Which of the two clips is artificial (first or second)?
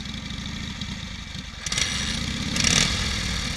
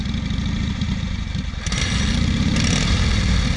second